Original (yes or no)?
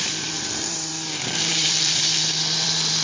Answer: no